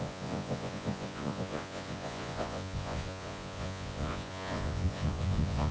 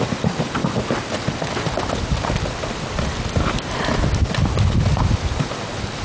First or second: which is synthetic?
first